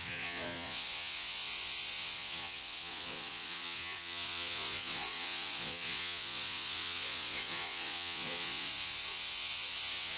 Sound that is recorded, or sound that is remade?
remade